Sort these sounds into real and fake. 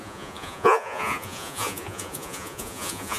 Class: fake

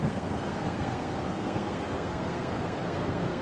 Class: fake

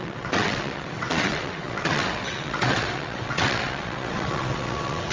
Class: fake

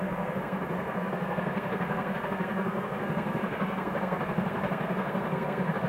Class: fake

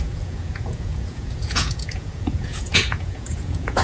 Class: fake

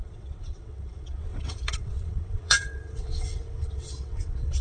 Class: fake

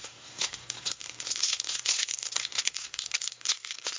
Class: fake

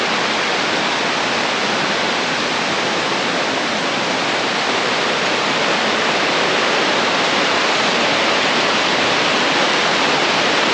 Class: real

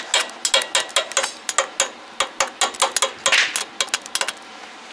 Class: real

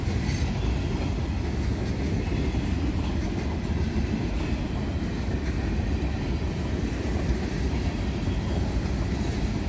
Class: real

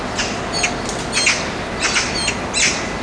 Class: real